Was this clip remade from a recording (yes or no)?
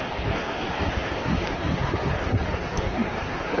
yes